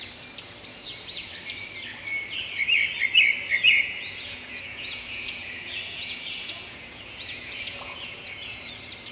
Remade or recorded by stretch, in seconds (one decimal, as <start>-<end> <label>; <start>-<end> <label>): 0.0-0.7 recorded; 0.7-1.3 remade; 1.3-3.5 recorded; 3.5-8.7 remade; 8.7-9.1 recorded